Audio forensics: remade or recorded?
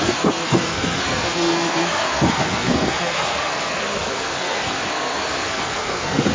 remade